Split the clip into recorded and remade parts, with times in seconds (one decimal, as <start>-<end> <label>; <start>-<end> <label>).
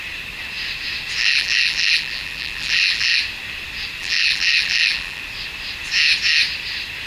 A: 0.0-1.2 recorded; 1.2-3.2 remade; 3.2-4.0 recorded; 4.0-5.2 remade; 5.2-7.1 recorded